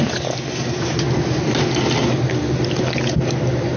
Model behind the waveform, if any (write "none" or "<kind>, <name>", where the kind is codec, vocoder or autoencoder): none